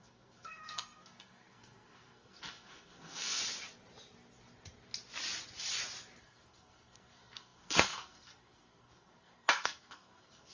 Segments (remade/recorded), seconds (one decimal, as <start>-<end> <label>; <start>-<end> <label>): 0.0-3.4 remade; 3.4-6.2 recorded; 6.2-10.5 remade